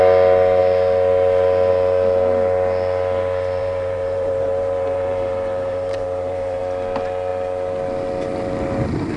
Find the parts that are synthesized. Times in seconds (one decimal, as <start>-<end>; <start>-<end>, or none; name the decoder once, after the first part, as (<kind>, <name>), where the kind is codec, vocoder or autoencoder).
3.6-6.6 (vocoder, BigVGAN v2)